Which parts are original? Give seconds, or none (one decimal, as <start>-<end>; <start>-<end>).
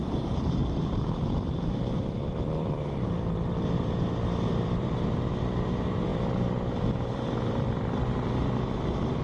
0.0-0.6; 5.4-6.1; 8.0-9.2